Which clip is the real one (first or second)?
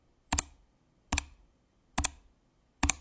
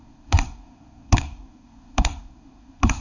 first